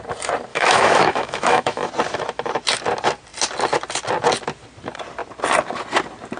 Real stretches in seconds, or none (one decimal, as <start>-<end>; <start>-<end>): 0.0-0.5; 1.9-6.4